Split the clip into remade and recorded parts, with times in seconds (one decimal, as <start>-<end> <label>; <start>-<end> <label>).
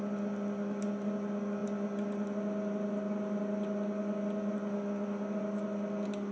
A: 0.0-6.3 recorded